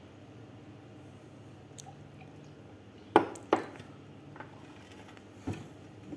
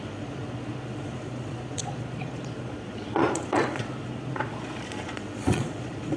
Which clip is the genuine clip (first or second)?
first